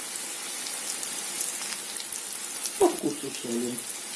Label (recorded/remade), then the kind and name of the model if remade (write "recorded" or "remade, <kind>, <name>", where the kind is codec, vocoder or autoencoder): recorded